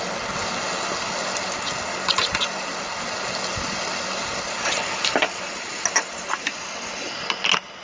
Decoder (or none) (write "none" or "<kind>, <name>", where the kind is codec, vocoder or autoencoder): none